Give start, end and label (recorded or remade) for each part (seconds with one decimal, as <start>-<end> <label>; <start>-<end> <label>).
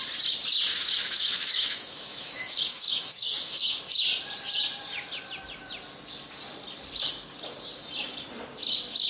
0.0-0.7 recorded; 0.7-3.8 remade; 3.8-9.1 recorded